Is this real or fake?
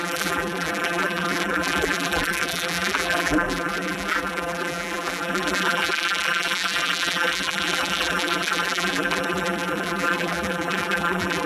fake